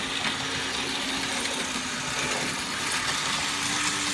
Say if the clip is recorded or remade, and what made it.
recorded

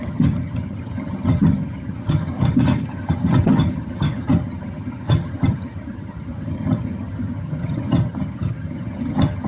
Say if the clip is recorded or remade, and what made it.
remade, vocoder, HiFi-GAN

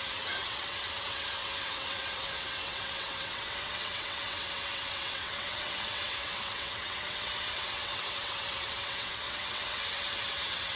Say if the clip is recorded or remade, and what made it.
remade, vocoder, WaveNeXt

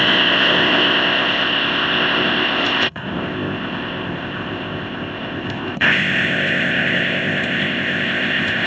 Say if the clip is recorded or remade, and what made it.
remade, codec, ZipCodec